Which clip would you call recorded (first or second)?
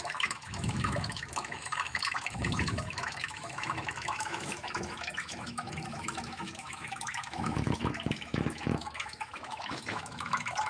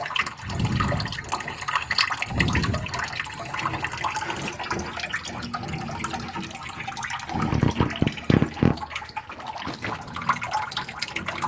second